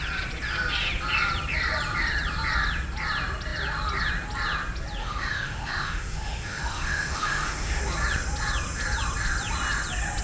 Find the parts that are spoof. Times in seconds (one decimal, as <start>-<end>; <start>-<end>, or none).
5.0-7.8